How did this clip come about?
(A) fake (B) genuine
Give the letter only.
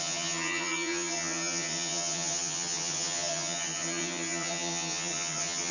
A